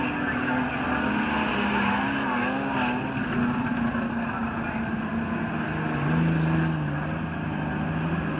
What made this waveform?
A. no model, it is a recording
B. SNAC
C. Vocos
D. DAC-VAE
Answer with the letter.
A